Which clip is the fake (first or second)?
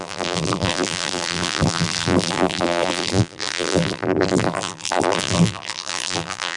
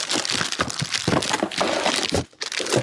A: first